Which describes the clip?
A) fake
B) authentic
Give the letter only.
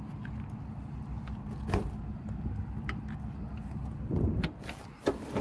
B